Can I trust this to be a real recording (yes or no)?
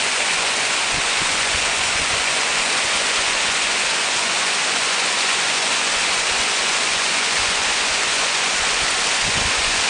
no